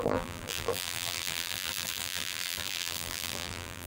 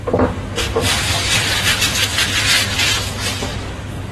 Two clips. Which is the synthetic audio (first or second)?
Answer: first